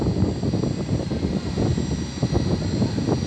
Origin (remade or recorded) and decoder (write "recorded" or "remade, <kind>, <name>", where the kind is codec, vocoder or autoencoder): recorded